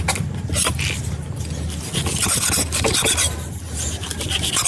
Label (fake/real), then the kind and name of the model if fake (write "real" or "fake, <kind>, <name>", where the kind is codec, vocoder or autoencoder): real